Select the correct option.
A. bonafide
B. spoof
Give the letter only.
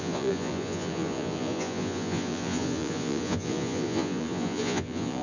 B